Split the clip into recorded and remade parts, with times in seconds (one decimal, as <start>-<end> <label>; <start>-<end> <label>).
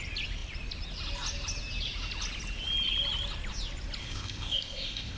0.0-4.0 recorded; 4.0-5.2 remade